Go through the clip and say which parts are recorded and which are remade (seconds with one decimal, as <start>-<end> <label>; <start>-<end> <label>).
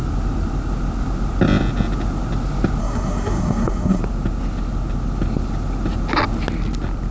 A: 0.0-2.8 recorded; 2.8-4.0 remade; 4.0-7.1 recorded